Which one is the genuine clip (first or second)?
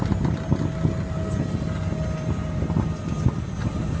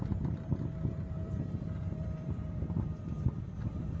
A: first